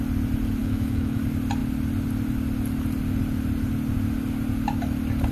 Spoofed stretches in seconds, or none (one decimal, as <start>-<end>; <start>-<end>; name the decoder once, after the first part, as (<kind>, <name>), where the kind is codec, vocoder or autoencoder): 0.6-1.2 (autoencoder, DAC-VAE)